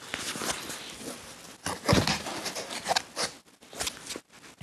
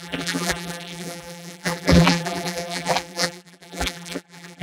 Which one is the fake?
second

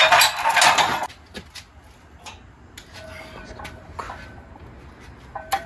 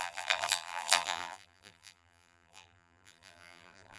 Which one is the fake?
second